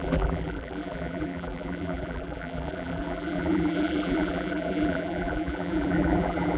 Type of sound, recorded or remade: remade